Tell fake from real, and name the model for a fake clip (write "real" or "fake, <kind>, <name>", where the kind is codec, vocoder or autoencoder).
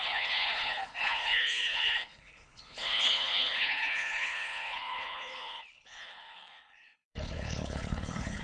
fake, codec, HILCodec